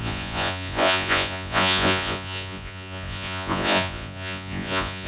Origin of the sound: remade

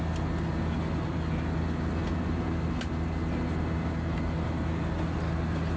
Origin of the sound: recorded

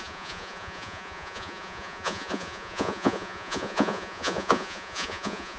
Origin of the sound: remade